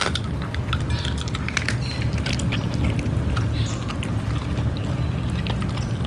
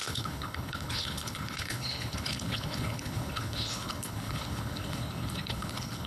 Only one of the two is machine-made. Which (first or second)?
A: second